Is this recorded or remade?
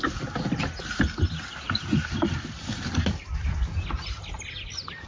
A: recorded